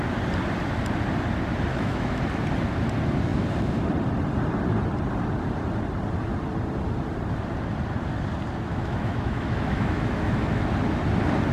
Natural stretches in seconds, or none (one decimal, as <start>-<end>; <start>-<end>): 0.0-1.7; 2.2-8.7; 10.7-11.5